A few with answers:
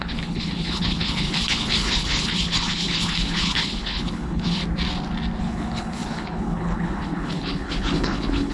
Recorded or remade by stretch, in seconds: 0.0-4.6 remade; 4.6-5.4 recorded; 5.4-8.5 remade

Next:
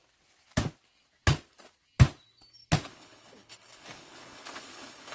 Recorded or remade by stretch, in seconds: 0.0-2.9 recorded; 2.9-5.1 remade

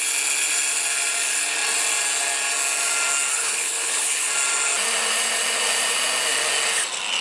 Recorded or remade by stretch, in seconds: 0.0-3.3 recorded; 3.3-4.3 remade; 4.3-7.2 recorded

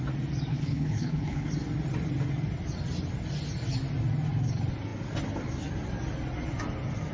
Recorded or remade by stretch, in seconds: 0.0-0.5 recorded; 0.5-1.5 remade; 1.5-7.1 recorded

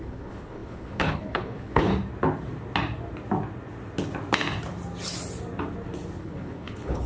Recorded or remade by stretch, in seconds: 0.0-1.9 remade; 1.9-6.2 recorded; 6.2-7.1 remade

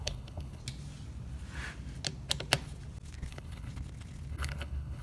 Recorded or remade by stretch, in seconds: 0.0-0.6 remade; 0.6-3.3 recorded; 3.3-3.7 remade; 3.7-4.3 recorded; 4.3-5.0 remade

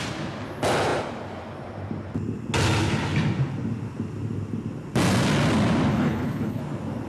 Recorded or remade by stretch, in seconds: 0.0-5.9 recorded; 5.9-6.6 remade; 6.6-7.1 recorded

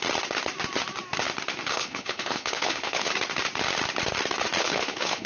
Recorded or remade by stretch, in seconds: 0.0-1.7 recorded; 1.7-3.1 remade; 3.1-4.6 recorded; 4.6-5.3 remade